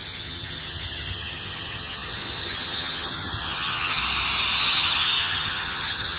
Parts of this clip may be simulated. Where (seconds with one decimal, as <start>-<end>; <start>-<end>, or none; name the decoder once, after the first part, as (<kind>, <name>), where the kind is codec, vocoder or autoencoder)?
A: 0.0-4.0 (vocoder, HiFi-GAN); 4.6-6.2